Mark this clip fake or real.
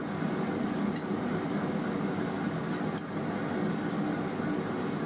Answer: real